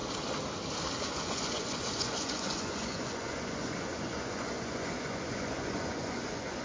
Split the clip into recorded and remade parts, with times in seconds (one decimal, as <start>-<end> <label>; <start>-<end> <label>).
0.0-1.0 recorded; 1.0-6.6 remade